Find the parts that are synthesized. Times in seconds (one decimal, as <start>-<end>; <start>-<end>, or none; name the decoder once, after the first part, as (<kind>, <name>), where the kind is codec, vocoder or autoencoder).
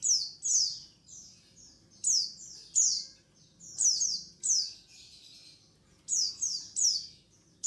none